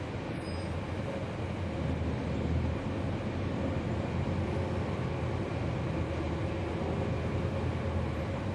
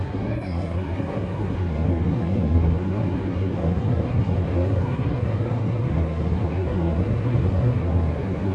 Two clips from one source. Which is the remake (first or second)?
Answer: second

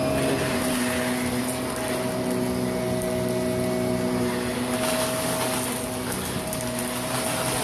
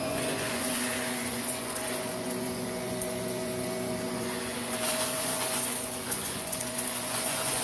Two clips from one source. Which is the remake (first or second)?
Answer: second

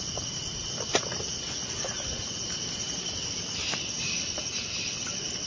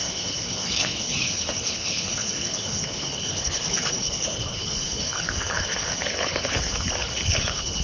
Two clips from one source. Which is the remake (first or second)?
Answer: second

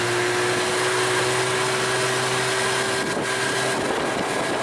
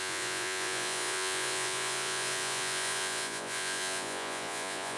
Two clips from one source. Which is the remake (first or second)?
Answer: second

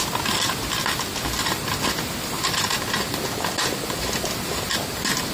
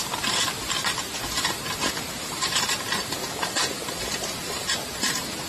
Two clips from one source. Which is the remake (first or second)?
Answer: second